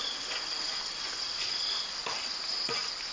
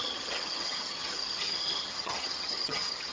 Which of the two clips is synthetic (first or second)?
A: second